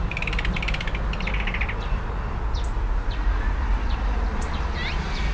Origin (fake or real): real